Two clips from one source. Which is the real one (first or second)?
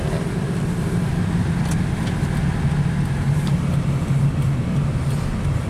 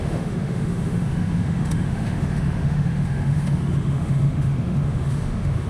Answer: first